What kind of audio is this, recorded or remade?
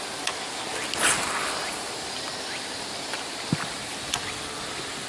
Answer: recorded